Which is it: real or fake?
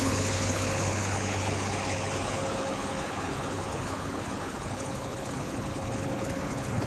fake